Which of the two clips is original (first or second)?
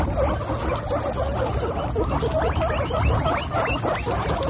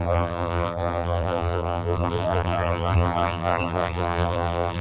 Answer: first